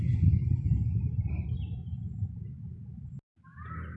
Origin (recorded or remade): recorded